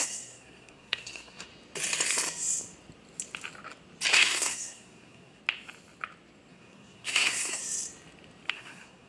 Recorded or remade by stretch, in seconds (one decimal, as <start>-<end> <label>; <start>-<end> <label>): 0.0-1.5 remade; 1.5-4.1 recorded; 4.1-5.4 remade; 5.4-6.5 recorded; 6.5-7.6 remade; 7.6-8.5 recorded; 8.5-9.1 remade